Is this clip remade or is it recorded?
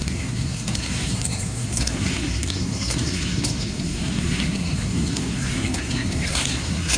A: remade